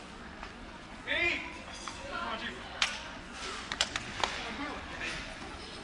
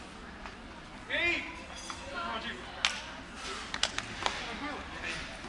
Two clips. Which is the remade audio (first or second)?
first